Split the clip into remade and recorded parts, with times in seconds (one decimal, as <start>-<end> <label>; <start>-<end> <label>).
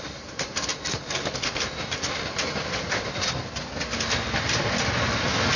0.0-5.6 recorded